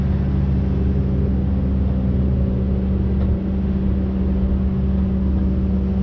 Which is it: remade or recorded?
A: recorded